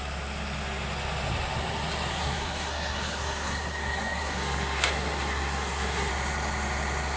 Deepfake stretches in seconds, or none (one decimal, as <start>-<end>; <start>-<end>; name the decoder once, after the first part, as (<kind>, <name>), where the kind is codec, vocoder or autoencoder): 2.1-6.1 (codec, SNAC)